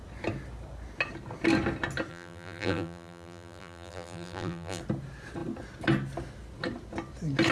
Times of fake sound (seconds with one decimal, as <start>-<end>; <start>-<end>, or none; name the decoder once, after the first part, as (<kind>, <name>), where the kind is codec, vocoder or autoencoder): 2.1-4.8 (vocoder, BigVGAN v2)